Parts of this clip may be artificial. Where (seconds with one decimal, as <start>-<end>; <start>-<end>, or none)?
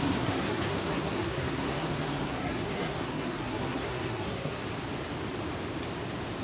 0.0-4.6